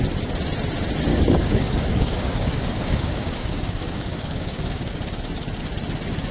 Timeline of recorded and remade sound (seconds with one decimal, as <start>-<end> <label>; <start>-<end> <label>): 0.0-1.1 recorded; 1.1-4.9 remade; 4.9-6.3 recorded